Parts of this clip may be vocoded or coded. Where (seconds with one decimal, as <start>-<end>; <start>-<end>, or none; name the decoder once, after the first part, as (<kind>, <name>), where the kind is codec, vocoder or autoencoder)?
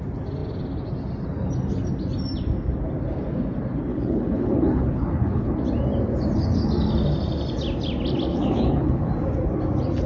3.9-5.5 (codec, HILCodec); 8.3-9.1